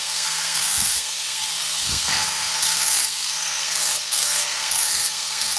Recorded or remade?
remade